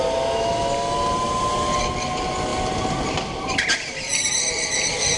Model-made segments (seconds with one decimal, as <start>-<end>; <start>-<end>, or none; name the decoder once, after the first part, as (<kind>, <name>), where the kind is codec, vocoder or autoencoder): none